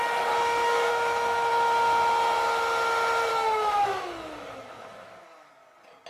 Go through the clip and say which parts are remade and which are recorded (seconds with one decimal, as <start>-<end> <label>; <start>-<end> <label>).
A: 0.0-0.9 recorded; 0.9-1.5 remade; 1.5-3.3 recorded; 3.3-5.5 remade; 5.5-6.1 recorded